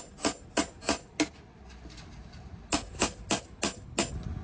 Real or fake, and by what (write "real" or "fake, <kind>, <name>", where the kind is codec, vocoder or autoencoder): real